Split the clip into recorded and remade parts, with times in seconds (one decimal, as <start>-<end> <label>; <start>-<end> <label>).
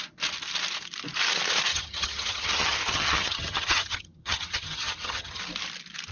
0.0-1.7 recorded; 1.7-5.4 remade; 5.4-6.1 recorded